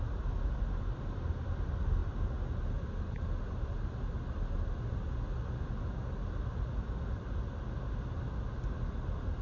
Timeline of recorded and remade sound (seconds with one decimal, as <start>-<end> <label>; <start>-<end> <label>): 0.0-9.4 recorded